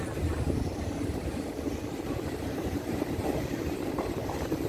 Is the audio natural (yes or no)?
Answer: no